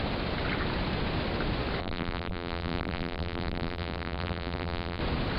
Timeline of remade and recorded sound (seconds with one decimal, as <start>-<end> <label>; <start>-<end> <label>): 0.0-1.8 recorded; 1.8-5.0 remade; 5.0-5.4 recorded